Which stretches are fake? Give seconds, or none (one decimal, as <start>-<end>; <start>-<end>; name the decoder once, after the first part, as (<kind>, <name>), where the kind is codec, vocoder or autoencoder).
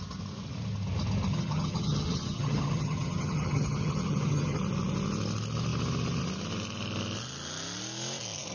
1.3-4.6 (vocoder, HiFi-GAN)